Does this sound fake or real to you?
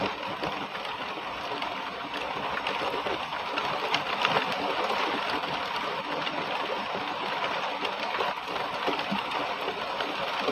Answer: real